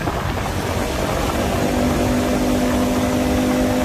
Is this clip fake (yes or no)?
no